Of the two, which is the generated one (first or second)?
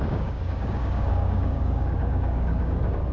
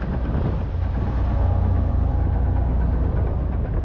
first